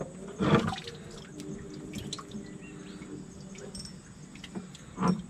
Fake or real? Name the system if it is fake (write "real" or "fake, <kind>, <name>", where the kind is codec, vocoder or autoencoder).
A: real